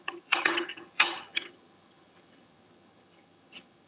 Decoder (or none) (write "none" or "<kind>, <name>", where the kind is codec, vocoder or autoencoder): vocoder, HiFi-GAN